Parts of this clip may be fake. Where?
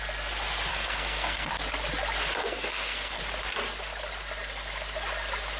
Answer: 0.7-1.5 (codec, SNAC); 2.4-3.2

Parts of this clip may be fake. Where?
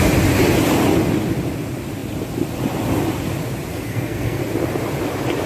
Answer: 3.7-4.4 (codec, SNAC)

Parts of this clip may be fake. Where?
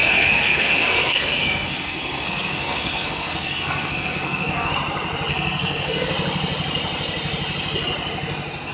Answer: 0.0-4.7 (codec, SNAC); 5.3-6.1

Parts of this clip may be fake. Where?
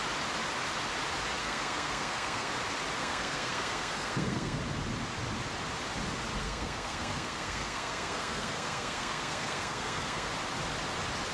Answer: 1.4-2.5 (codec, SNAC); 3.0-4.6; 6.4-10.3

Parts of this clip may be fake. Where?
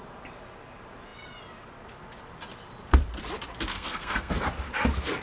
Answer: 3.7-4.3 (codec, SNAC)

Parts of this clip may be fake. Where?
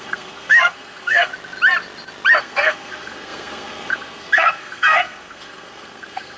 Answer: 0.0-1.3 (codec, SNAC); 2.4-6.4